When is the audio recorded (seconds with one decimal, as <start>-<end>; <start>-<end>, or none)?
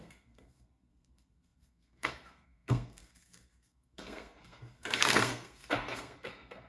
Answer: none